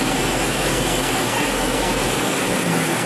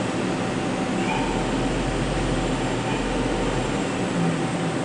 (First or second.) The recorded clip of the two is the second